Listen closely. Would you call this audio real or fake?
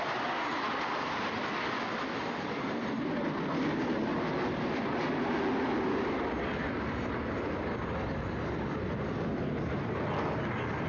real